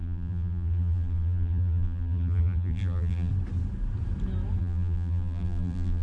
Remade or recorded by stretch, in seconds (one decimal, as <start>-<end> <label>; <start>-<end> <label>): 0.0-3.3 remade; 3.3-4.6 recorded; 4.6-6.0 remade